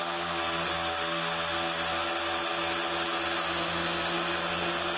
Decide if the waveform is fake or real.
real